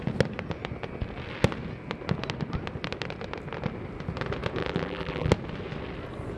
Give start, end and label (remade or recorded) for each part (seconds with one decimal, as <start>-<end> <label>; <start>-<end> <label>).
0.0-4.6 recorded; 4.6-5.3 remade; 5.3-6.4 recorded